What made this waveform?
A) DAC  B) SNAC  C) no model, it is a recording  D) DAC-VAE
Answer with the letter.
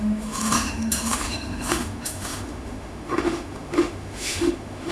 D